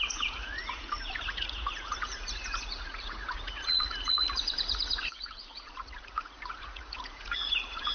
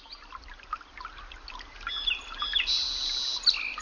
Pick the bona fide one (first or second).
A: second